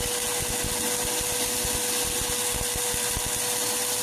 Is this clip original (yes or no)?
yes